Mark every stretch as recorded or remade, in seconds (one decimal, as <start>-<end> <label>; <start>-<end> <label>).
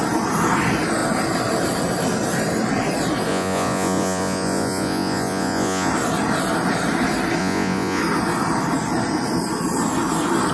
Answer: 0.0-3.3 recorded; 3.3-5.9 remade; 5.9-7.4 recorded; 7.4-8.0 remade; 8.0-10.5 recorded